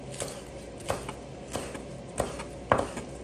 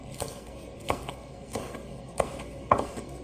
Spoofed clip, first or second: second